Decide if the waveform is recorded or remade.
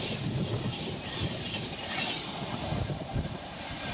remade